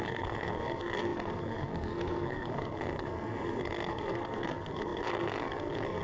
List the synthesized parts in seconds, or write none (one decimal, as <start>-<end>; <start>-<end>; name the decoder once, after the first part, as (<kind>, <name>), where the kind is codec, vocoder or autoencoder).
0.0-6.0 (codec, SNAC)